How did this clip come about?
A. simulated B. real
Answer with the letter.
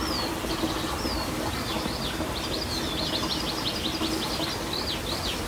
B